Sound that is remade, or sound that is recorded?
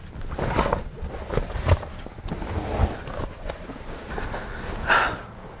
recorded